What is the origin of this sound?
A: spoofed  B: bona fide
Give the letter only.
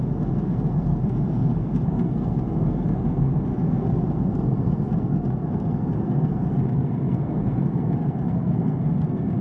A